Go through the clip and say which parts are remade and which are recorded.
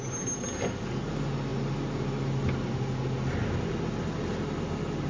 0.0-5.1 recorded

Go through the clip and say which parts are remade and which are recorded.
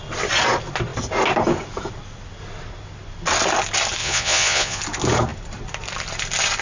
0.0-4.0 recorded; 4.0-4.8 remade; 4.8-6.6 recorded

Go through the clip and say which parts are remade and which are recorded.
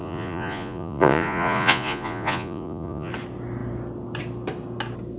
0.0-3.1 remade; 3.1-5.2 recorded